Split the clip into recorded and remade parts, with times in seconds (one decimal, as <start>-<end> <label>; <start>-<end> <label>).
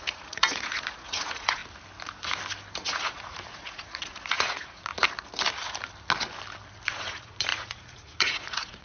0.0-1.6 remade; 1.6-2.7 recorded; 2.7-4.9 remade; 4.9-6.9 recorded; 6.9-8.8 remade